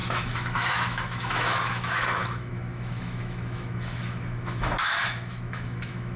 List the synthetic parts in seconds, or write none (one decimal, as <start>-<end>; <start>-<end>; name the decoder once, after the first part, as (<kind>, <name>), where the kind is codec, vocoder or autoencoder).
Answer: 0.0-6.2 (autoencoder, DAC-VAE)